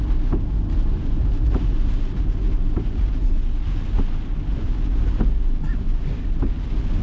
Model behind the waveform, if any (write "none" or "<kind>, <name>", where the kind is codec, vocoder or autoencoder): none